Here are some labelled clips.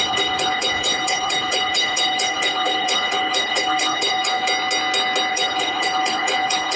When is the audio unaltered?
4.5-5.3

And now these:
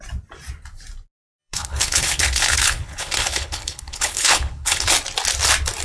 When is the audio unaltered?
0.0-1.4; 4.9-5.8

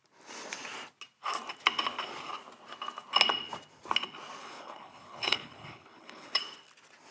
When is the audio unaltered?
0.0-4.4; 6.4-7.1

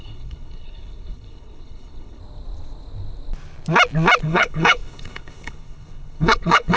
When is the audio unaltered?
2.2-4.2

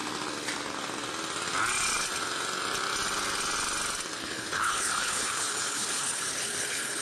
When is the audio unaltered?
0.0-4.2

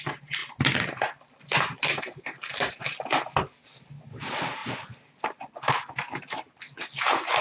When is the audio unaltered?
0.0-7.4

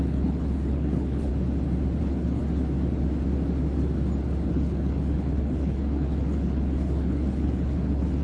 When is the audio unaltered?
1.3-2.0; 2.4-4.5

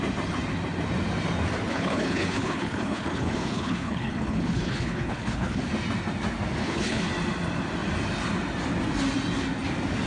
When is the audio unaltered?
0.0-1.7; 5.6-6.6; 7.1-10.1